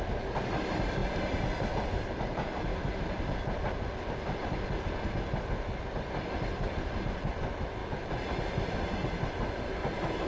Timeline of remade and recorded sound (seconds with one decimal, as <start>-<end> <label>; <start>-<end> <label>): 0.0-10.3 recorded